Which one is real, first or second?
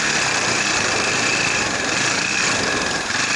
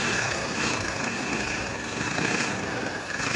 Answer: first